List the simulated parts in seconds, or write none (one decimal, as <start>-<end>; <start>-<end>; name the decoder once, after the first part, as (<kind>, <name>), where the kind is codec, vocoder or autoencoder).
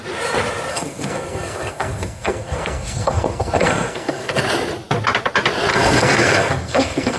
0.7-4.4 (codec, SNAC); 5.7-7.2